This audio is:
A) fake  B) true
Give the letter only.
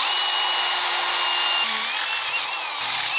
B